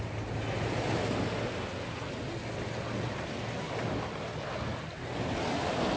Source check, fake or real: real